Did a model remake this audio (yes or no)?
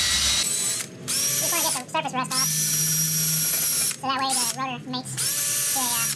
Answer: no